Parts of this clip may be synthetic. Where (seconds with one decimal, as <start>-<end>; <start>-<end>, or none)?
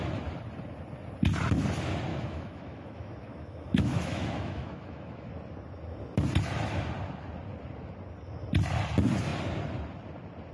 2.1-5.3